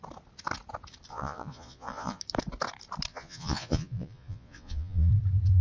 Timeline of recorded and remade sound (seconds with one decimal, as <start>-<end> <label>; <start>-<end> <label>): 0.0-1.1 recorded; 1.1-2.2 remade; 2.2-3.1 recorded; 3.1-5.1 remade; 5.1-5.6 recorded